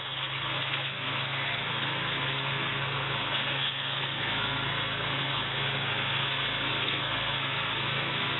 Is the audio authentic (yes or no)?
no